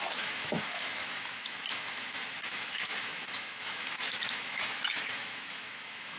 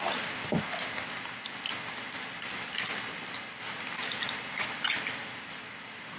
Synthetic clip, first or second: first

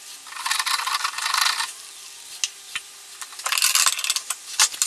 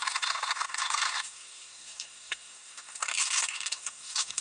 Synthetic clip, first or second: second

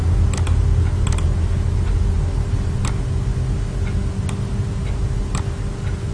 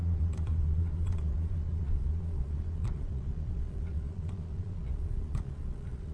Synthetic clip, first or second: second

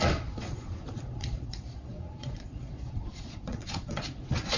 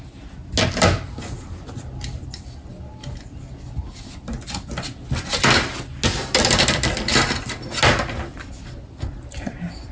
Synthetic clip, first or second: first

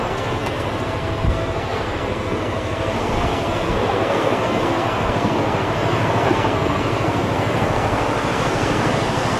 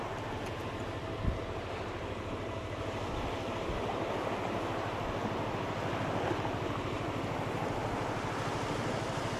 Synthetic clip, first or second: first